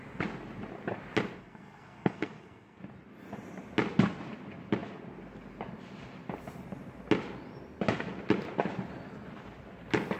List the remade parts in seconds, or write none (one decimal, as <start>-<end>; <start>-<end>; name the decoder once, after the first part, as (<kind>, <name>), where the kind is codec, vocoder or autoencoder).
1.4-2.8 (codec, SNAC)